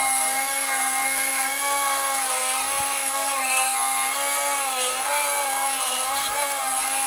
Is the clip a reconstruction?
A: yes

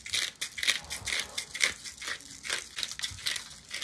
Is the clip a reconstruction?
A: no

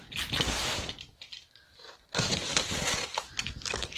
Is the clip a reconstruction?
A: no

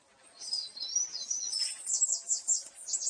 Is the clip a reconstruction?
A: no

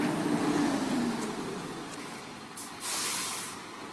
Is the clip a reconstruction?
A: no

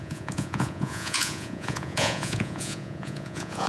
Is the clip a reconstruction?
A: yes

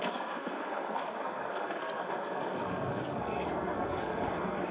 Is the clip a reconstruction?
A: yes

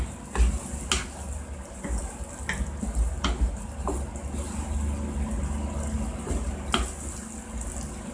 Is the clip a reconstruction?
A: no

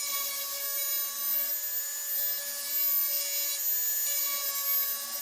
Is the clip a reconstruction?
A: no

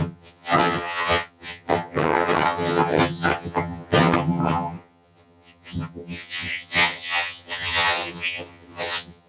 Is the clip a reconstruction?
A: yes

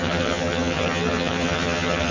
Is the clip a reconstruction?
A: yes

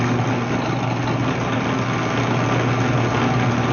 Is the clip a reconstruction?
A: no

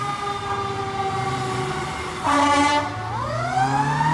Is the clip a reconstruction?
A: no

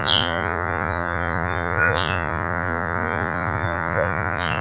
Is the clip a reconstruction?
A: yes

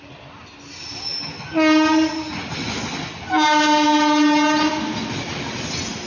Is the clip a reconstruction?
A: no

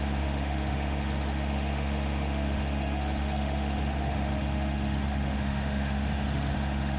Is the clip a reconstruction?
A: yes